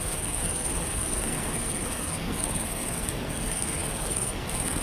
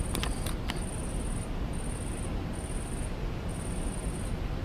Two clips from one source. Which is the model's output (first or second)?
first